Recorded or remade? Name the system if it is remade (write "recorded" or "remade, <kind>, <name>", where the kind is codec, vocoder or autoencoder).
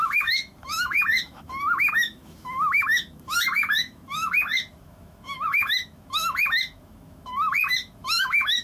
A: remade, autoencoder, DAC-VAE